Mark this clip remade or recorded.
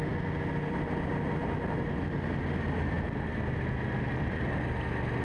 recorded